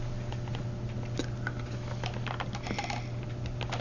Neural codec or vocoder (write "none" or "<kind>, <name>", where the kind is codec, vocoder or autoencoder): none